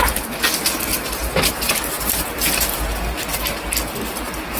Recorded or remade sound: recorded